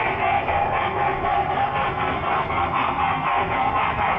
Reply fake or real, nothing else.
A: fake